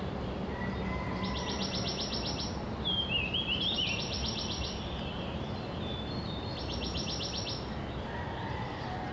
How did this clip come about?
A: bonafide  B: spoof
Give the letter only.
A